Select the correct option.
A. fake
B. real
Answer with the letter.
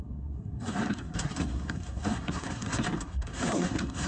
A